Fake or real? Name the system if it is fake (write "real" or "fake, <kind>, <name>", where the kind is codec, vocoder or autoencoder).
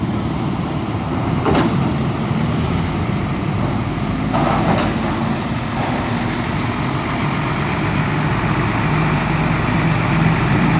real